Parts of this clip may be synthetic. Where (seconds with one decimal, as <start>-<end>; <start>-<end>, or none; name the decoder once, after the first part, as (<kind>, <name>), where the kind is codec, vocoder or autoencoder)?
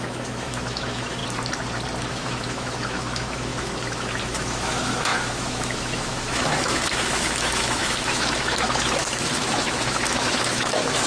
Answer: 0.0-1.2 (autoencoder, DAC-VAE); 2.1-11.1